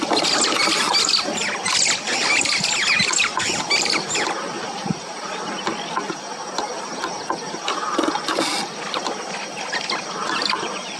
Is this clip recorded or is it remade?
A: recorded